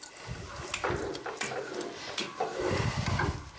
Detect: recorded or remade recorded